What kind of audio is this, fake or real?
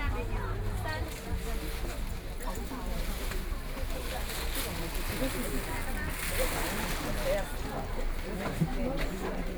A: real